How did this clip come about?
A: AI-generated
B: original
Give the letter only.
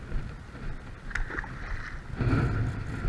B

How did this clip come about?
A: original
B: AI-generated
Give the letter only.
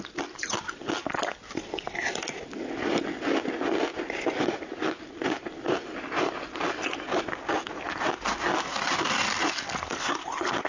A